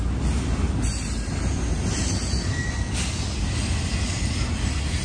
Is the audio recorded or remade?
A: recorded